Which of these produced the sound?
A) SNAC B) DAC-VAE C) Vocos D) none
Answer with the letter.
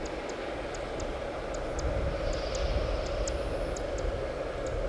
D